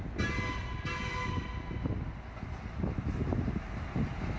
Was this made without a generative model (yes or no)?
yes